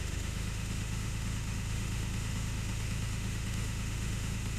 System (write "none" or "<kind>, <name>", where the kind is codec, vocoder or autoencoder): autoencoder, DAC-VAE